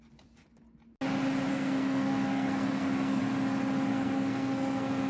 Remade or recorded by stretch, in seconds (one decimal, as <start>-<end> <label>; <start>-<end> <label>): 0.0-1.5 recorded; 1.5-3.2 remade; 3.2-3.9 recorded; 3.9-5.1 remade